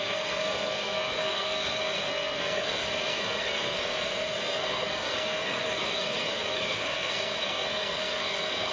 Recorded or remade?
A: remade